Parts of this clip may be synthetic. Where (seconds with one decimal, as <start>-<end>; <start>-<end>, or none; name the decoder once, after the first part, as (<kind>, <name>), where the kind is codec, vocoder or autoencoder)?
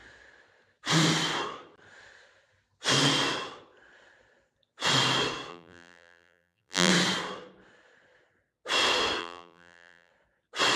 5.5-6.9 (vocoder, BigVGAN v2); 9.2-10.1